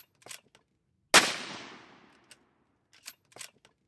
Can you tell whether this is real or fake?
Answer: real